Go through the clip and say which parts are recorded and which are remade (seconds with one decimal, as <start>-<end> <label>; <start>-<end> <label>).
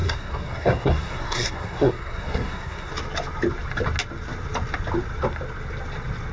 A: 0.0-2.9 remade; 2.9-6.3 recorded